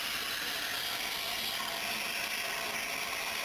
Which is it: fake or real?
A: real